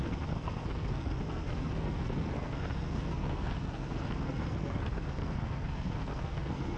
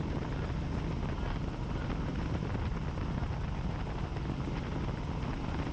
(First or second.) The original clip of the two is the second